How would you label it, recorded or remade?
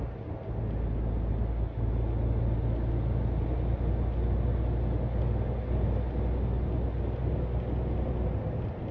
recorded